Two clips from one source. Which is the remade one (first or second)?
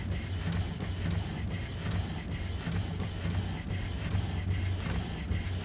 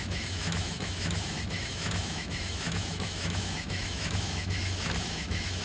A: second